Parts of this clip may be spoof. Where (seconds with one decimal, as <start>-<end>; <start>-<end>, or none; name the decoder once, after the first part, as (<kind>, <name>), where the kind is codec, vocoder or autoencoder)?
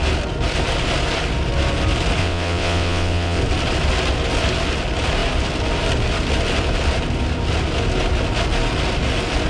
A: 2.2-3.4 (vocoder, WaveNeXt)